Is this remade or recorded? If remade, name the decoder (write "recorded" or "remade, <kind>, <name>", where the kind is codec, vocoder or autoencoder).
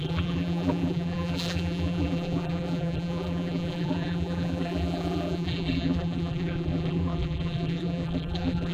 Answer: remade, vocoder, BigVGAN v2